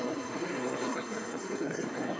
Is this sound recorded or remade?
remade